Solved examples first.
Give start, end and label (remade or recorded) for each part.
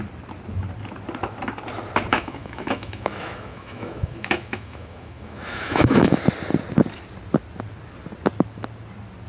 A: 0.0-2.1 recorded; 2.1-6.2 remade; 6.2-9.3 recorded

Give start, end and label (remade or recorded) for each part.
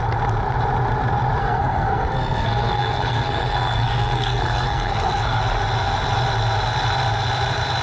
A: 0.0-1.4 recorded; 1.4-5.4 remade; 5.4-7.8 recorded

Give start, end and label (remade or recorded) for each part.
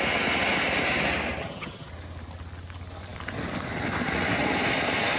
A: 0.0-1.4 recorded; 1.4-1.9 remade; 1.9-5.2 recorded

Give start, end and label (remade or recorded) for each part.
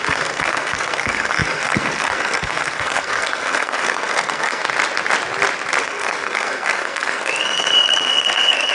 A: 0.0-4.6 remade; 4.6-5.8 recorded; 5.8-8.7 remade